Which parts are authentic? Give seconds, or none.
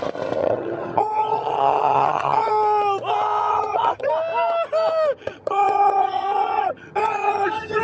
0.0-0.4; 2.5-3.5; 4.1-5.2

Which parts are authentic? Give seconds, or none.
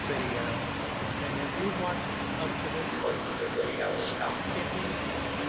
0.0-2.9; 4.4-5.5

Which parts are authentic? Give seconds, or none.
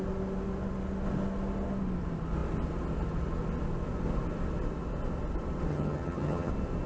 0.0-5.7; 6.5-6.9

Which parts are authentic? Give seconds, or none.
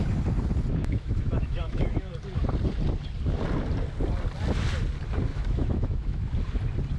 0.0-0.8; 2.1-5.3; 6.2-7.0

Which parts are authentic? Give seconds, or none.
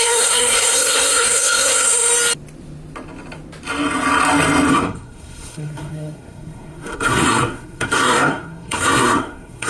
2.1-4.7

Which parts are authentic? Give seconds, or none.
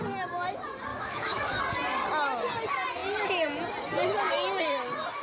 0.0-0.9; 1.6-5.2